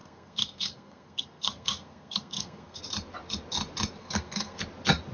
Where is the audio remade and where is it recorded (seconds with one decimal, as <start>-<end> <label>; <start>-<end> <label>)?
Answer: 0.0-2.8 remade; 2.8-4.0 recorded; 4.0-4.6 remade; 4.6-5.1 recorded